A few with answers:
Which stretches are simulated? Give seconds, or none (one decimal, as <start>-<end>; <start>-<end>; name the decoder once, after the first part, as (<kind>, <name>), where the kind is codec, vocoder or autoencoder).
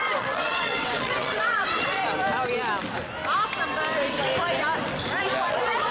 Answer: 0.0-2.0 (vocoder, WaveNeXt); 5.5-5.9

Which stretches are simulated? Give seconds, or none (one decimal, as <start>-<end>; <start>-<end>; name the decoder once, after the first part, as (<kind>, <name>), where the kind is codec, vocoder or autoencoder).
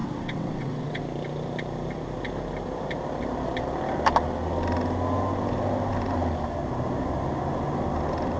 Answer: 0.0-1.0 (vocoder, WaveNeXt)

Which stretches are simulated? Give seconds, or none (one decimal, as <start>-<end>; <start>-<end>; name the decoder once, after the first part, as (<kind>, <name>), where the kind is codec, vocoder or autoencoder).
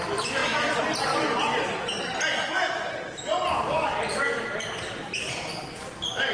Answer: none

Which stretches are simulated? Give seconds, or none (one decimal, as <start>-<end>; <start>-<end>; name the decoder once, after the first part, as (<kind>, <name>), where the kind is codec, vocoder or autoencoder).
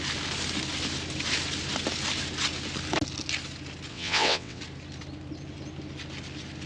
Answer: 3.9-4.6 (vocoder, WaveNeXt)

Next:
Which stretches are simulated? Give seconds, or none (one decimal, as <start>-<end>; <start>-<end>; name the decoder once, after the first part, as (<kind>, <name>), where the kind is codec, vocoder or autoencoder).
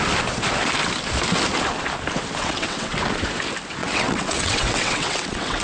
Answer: 2.4-3.0 (vocoder, WaveNeXt); 3.8-5.6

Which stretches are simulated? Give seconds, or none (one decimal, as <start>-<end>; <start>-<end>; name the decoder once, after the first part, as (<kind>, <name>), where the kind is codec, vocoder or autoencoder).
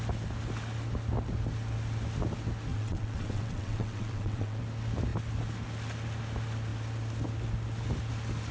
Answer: 2.7-4.6 (vocoder, WaveNeXt)